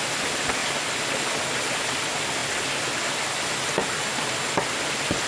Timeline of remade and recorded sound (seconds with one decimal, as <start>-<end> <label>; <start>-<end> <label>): 0.0-5.3 recorded